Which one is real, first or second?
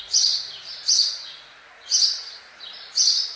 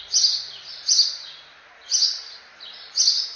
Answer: second